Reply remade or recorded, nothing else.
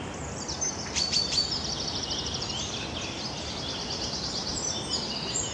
remade